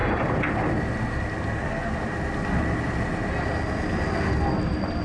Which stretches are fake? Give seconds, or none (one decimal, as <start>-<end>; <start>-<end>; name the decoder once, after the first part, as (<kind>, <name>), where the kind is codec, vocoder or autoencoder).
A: 0.0-0.5 (vocoder, BigVGAN v2)